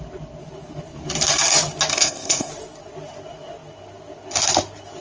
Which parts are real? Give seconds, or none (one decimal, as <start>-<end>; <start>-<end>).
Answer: 0.0-1.9; 2.5-5.0